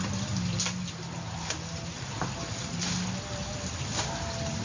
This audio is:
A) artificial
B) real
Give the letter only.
B